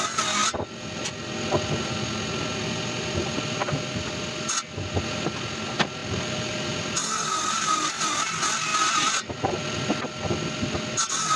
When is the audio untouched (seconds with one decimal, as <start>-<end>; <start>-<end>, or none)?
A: 0.0-11.4